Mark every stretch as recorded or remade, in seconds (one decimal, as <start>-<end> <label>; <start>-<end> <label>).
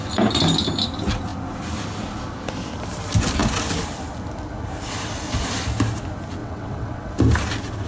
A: 0.0-6.4 recorded; 6.4-7.1 remade; 7.1-7.9 recorded